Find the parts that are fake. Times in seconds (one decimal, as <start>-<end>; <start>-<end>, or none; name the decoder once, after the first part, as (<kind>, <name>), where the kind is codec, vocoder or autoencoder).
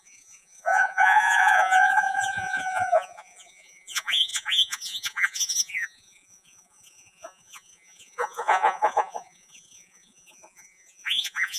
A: 0.0-11.6 (vocoder, Vocos)